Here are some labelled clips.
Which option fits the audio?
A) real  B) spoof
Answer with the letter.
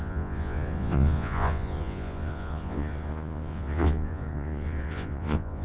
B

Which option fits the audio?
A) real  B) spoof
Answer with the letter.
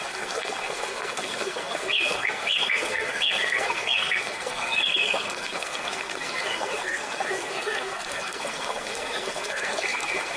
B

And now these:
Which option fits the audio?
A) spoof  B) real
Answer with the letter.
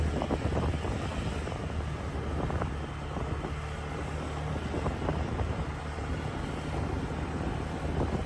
B